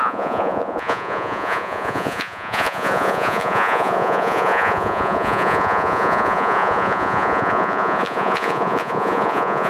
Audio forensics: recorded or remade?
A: remade